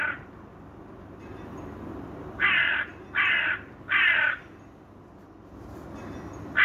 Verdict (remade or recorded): recorded